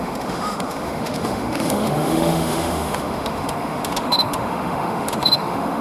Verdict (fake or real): fake